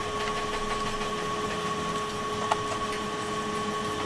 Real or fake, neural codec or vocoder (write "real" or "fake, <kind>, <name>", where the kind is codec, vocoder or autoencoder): real